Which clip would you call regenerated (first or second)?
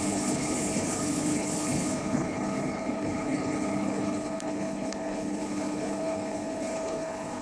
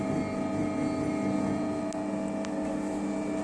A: first